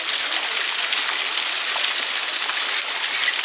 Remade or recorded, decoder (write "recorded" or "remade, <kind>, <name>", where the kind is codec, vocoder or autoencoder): recorded